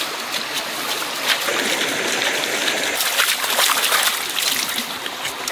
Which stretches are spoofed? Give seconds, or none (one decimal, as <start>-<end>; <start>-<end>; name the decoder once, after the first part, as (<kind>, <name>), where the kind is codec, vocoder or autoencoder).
none

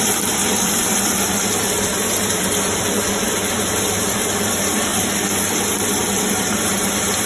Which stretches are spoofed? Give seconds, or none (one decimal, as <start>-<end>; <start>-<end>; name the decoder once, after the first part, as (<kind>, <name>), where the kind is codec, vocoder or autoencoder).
0.0-4.9 (vocoder, BigVGAN v2); 6.4-7.3

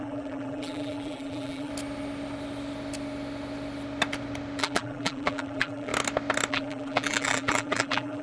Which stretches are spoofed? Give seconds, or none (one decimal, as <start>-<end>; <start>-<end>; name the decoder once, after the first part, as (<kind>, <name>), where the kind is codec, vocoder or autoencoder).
0.0-1.7 (vocoder, BigVGAN v2); 4.6-5.9; 6.5-8.2

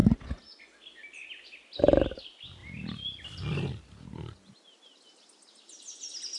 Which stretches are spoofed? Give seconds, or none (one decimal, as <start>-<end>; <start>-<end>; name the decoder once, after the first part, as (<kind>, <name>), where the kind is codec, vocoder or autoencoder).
none

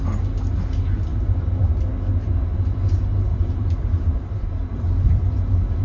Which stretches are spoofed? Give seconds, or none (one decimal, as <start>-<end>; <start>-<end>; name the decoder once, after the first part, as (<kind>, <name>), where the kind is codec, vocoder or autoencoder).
1.1-1.7 (vocoder, BigVGAN v2); 3.3-5.3

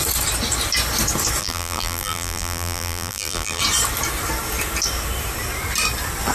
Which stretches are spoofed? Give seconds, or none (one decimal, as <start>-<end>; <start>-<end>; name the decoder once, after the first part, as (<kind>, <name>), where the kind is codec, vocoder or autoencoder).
1.4-3.6 (vocoder, BigVGAN v2)

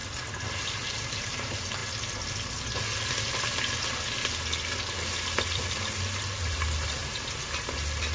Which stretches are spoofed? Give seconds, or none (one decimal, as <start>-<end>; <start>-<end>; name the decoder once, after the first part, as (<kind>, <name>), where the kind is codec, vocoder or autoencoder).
0.6-1.8 (vocoder, BigVGAN v2); 5.8-8.1

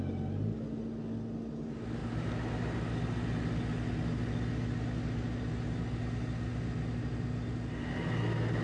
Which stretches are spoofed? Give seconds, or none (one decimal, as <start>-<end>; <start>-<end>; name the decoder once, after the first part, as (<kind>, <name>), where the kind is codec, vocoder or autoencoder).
none